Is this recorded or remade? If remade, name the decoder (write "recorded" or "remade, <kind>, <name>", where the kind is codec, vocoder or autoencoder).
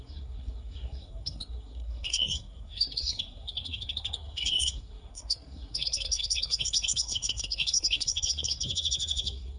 remade, codec, SNAC